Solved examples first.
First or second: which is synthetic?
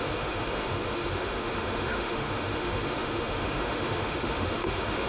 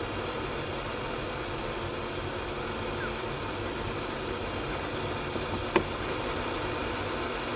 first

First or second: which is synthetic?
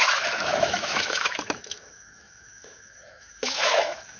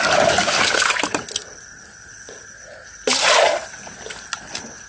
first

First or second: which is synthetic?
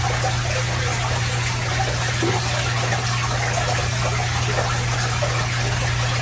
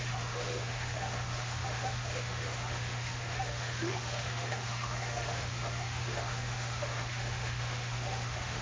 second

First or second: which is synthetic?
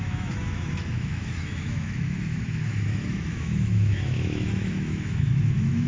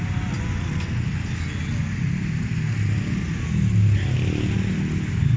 first